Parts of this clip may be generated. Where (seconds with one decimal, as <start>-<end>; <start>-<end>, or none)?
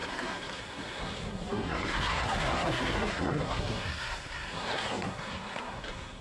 0.0-6.2